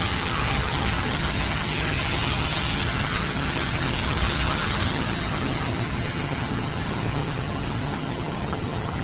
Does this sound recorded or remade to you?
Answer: remade